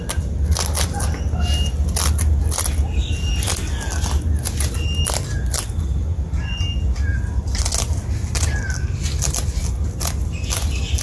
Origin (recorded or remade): recorded